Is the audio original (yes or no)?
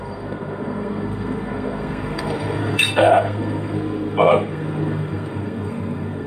no